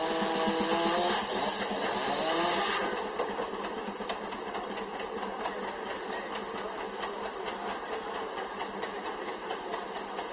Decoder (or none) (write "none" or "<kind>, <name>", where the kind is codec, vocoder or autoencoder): none